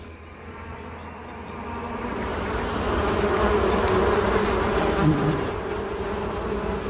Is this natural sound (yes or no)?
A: yes